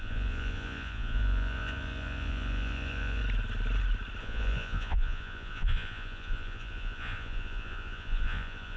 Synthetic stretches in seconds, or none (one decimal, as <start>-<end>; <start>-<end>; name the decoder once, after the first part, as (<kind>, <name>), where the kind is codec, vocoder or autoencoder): 0.0-3.2 (vocoder, Vocos); 4.2-8.8

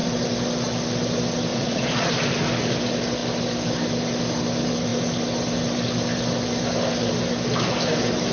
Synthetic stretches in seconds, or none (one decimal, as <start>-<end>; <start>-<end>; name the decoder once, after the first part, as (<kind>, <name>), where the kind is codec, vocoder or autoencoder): 1.5-2.1 (vocoder, Vocos)

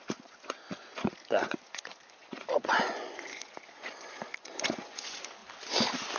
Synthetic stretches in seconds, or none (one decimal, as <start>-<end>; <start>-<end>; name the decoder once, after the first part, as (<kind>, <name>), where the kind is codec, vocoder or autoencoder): 0.0-5.4 (vocoder, Vocos)

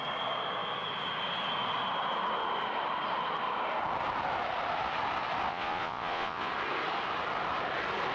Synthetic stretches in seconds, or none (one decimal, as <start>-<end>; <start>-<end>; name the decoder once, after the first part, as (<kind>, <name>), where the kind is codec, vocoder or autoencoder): 5.5-6.5 (vocoder, Vocos)

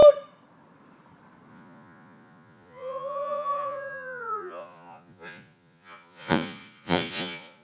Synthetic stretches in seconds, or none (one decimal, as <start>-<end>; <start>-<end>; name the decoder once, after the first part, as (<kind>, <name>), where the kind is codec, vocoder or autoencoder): 1.5-7.6 (vocoder, Vocos)

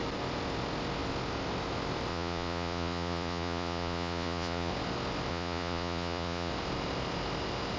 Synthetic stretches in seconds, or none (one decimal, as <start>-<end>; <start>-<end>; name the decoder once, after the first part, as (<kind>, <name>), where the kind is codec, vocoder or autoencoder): 2.1-4.7 (vocoder, Vocos); 5.3-6.5

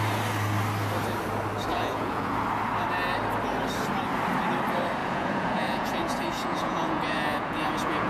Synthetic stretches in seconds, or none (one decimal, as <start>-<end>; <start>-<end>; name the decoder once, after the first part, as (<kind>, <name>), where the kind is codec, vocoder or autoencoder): 1.7-2.3 (vocoder, Vocos); 5.0-8.1

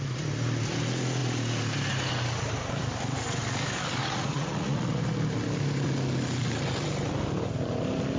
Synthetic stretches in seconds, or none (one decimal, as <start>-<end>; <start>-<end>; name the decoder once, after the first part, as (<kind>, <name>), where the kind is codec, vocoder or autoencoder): 4.0-5.0 (vocoder, Vocos)